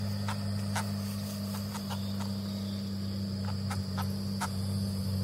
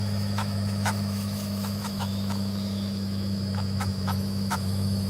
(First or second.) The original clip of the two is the first